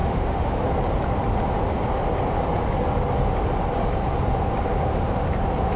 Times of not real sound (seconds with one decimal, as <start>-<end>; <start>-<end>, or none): 0.0-0.6